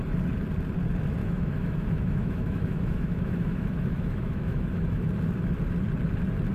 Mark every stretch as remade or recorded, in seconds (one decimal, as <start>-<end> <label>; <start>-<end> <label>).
0.0-1.2 recorded; 1.2-5.0 remade; 5.0-6.5 recorded